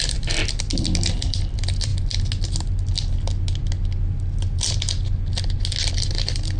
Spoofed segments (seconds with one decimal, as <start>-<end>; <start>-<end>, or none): 0.0-0.4; 1.2-1.9; 5.9-6.6